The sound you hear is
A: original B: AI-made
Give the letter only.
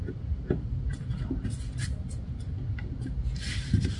A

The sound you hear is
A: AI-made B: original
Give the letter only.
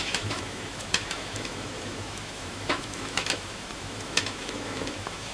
A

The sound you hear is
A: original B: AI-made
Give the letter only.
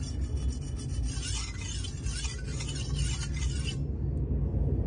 A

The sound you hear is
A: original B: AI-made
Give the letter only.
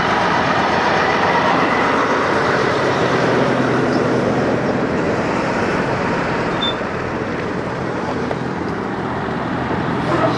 B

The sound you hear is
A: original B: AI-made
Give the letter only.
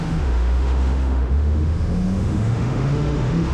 B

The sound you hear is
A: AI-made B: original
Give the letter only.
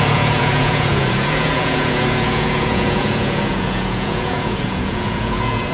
A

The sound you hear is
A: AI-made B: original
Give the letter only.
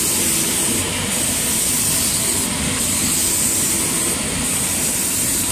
B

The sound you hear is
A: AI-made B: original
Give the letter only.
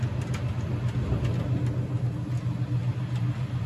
B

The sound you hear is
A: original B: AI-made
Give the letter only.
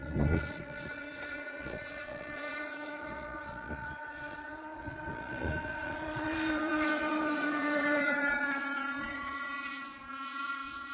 B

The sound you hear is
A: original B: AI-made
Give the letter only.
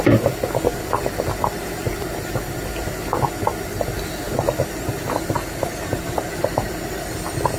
A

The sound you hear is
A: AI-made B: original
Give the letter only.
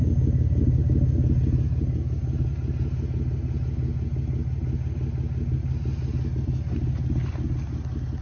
B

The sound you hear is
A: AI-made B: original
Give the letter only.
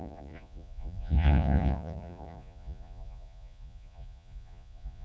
A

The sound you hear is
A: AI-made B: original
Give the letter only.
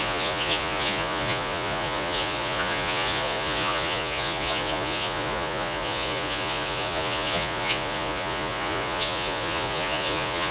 A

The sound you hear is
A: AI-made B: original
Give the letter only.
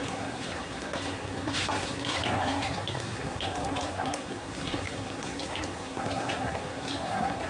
A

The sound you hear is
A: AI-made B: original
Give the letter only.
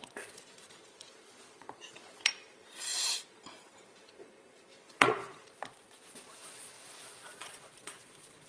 A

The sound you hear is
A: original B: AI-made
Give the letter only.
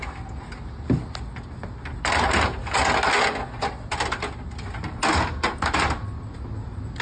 A